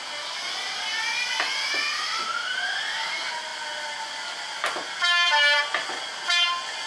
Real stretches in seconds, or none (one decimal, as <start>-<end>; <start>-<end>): 0.0-1.9; 2.7-6.9